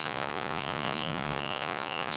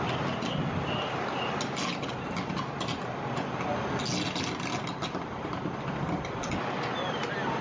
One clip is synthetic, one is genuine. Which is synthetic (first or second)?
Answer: first